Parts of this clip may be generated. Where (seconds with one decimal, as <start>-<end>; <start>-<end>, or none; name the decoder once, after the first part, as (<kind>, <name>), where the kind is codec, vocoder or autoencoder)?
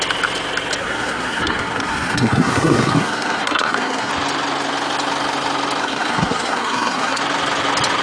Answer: 0.8-4.1 (codec, SNAC); 5.8-7.2